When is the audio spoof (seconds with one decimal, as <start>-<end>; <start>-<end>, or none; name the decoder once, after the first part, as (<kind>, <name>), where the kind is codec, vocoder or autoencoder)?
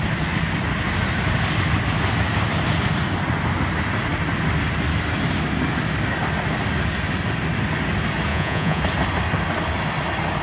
8.3-8.8 (vocoder, Vocos)